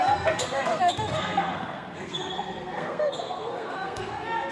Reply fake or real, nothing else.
fake